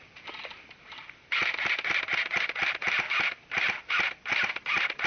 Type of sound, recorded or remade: recorded